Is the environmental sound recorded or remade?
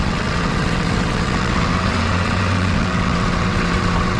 remade